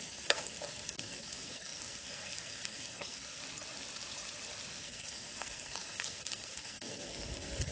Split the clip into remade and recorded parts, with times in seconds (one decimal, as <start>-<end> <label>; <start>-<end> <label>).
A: 0.0-3.4 remade; 3.4-4.7 recorded; 4.7-7.7 remade